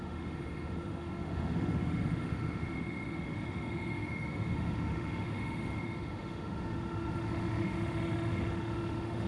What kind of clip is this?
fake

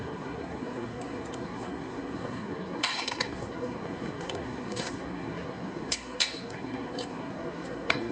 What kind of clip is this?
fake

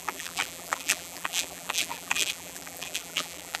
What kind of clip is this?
fake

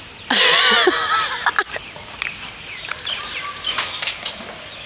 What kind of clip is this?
real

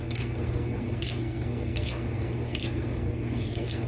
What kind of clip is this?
fake